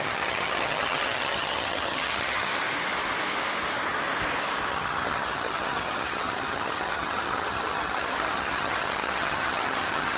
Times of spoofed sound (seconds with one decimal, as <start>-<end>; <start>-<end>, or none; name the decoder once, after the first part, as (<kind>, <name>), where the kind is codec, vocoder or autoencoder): 0.0-2.5 (vocoder, HiFi-GAN); 4.7-10.2